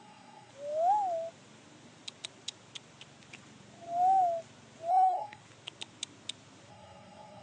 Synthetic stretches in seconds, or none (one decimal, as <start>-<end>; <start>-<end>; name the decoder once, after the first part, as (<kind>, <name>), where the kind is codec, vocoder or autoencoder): 0.0-0.5 (codec, SNAC); 4.9-5.4; 6.7-7.4